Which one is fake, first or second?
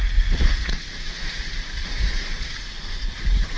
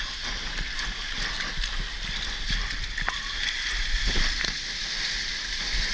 first